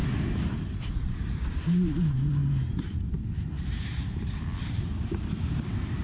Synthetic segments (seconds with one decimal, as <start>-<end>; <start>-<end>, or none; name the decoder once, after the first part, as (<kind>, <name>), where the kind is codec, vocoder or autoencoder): 0.0-2.4 (vocoder, BigVGAN v2); 3.0-4.9; 5.5-6.0